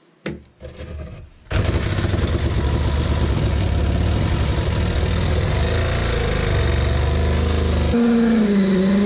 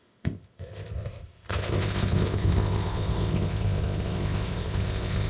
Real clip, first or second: first